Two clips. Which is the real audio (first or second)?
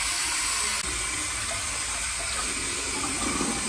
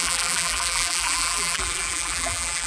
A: first